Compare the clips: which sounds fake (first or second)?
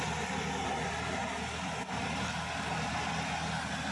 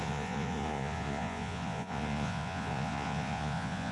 second